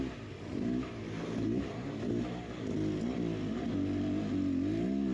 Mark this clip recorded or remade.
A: recorded